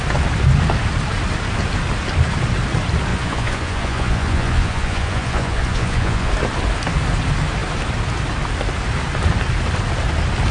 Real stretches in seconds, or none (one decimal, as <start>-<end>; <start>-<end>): 0.0-3.1; 6.3-10.5